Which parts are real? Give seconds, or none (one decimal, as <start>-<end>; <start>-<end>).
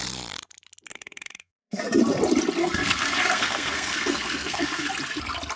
0.0-0.9; 1.8-2.6; 4.9-5.6